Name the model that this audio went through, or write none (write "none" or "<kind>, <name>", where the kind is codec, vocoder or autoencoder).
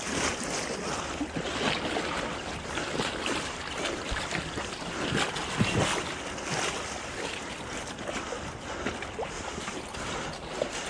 none